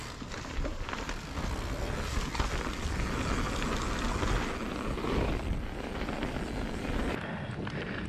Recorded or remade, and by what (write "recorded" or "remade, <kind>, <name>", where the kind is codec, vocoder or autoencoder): recorded